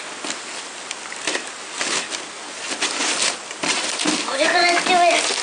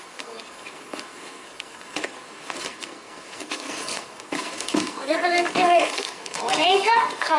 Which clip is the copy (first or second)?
second